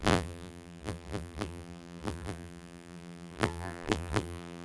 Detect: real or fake fake